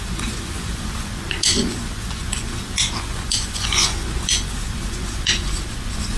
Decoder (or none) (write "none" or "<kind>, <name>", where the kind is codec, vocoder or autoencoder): vocoder, Vocos